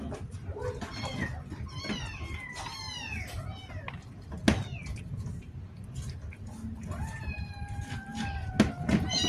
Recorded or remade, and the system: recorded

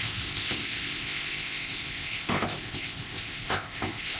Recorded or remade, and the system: remade, codec, ZipCodec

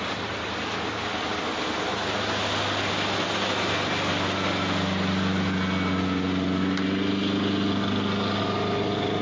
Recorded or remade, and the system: recorded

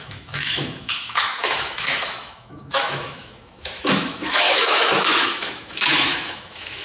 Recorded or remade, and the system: remade, autoencoder, DAC-VAE